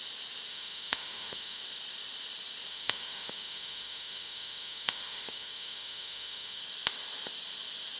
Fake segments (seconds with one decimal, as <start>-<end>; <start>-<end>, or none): 0.5-1.6; 2.7-6.6